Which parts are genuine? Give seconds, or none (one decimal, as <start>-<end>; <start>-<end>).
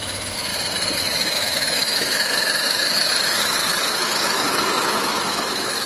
0.5-1.0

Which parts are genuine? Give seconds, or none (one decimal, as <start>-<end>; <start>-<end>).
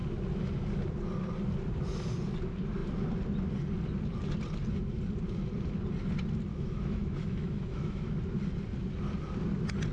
0.0-6.5; 8.1-9.9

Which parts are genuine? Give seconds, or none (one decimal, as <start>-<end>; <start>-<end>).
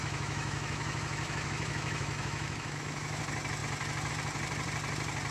3.2-5.3